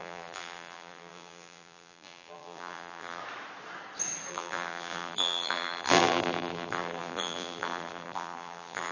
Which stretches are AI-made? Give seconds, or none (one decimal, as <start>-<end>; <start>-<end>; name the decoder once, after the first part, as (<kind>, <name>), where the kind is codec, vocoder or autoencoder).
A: 0.0-3.2 (vocoder, BigVGAN v2); 4.3-8.9